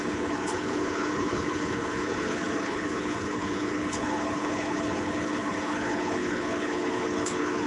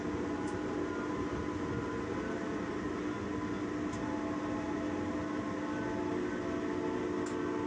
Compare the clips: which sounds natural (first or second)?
second